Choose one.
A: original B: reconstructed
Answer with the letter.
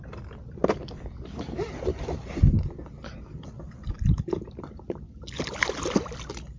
A